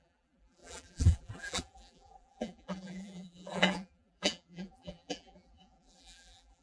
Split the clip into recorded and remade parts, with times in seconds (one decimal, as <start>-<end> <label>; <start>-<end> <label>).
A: 0.0-6.6 remade